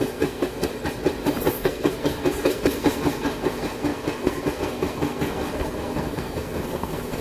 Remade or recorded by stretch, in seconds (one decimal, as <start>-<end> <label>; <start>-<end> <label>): 0.0-0.7 remade; 0.7-1.5 recorded; 1.5-7.2 remade